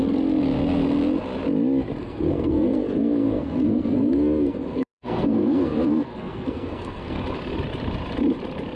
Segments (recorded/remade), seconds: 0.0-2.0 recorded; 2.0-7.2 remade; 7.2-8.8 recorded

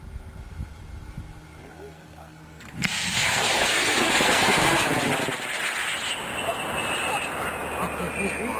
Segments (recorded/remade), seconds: 0.0-1.6 recorded; 1.6-4.9 remade; 4.9-8.6 recorded